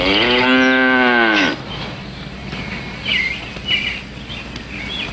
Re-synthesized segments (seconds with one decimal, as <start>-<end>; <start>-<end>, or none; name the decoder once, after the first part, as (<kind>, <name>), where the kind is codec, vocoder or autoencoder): none